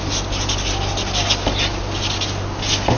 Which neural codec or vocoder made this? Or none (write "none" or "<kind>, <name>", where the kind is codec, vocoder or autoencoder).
none